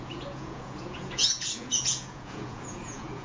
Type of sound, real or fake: fake